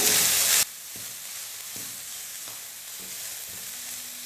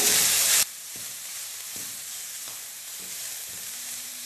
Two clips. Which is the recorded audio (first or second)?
first